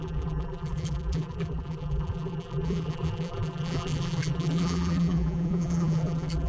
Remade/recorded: remade